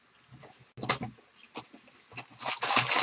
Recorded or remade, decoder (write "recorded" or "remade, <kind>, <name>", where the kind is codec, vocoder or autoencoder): recorded